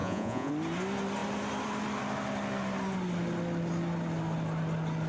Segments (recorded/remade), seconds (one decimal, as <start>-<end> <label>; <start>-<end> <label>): 0.0-0.5 remade; 0.5-5.1 recorded